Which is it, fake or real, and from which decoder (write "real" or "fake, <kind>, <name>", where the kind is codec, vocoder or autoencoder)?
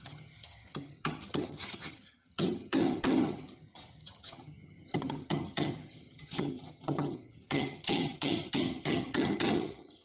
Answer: fake, vocoder, HiFi-GAN